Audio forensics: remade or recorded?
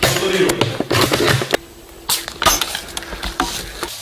recorded